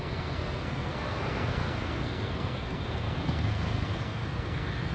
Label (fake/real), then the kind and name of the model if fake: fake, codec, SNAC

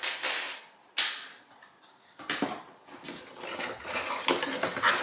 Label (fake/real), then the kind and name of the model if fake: real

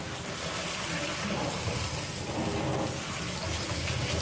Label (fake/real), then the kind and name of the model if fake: real